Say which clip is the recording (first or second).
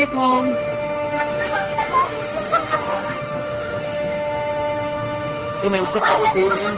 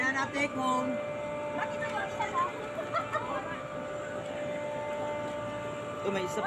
second